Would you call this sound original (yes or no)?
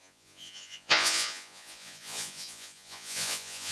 no